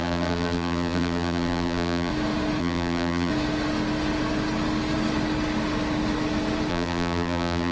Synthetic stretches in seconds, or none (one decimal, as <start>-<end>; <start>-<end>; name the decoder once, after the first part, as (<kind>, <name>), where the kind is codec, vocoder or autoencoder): 0.0-2.1 (vocoder, BigVGAN v2); 2.6-3.3; 6.7-7.7